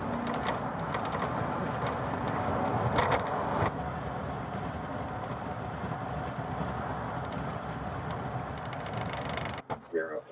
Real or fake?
real